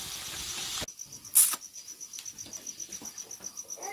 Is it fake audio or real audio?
real